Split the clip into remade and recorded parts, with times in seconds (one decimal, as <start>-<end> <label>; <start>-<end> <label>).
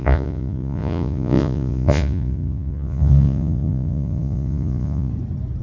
0.0-5.1 remade; 5.1-5.6 recorded